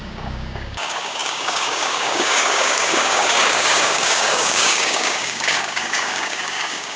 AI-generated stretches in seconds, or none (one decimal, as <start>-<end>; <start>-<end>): 0.0-7.0

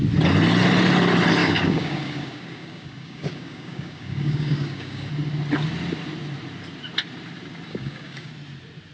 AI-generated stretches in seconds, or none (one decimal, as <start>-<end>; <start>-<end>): 1.4-5.1; 7.7-8.3

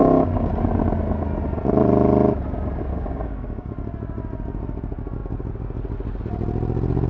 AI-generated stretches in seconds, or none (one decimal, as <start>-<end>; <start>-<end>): 0.0-0.5; 2.9-3.7

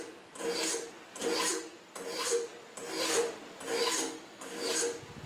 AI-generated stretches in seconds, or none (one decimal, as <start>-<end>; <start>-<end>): 4.0-4.7

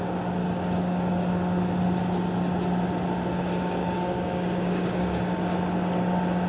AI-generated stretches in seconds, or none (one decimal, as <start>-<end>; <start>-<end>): 0.4-1.1; 3.8-5.0

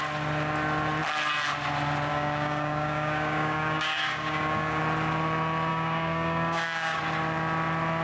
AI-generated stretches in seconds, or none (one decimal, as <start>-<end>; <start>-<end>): 2.1-4.8; 5.7-7.0